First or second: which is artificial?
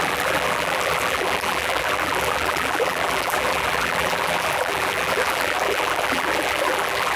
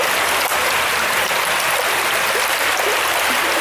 first